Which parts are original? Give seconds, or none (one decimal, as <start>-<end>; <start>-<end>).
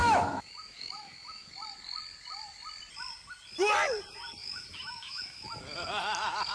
1.5-4.4; 5.6-6.5